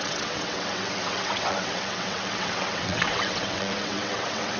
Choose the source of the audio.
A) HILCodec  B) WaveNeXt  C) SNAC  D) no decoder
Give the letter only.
B